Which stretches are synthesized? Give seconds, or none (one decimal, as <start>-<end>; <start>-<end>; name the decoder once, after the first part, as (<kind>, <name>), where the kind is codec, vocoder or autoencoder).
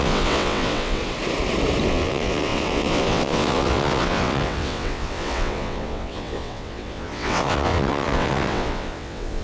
0.0-1.0 (vocoder, WaveNeXt); 1.9-9.4